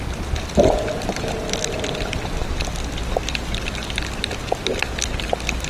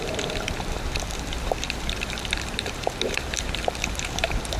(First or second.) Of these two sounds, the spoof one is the second